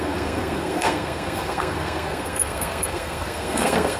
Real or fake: fake